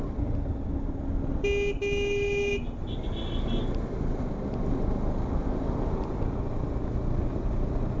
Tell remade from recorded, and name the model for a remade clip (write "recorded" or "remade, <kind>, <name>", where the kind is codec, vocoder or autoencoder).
recorded